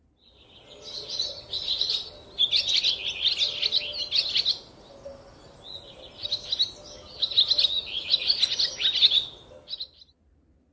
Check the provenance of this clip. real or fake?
real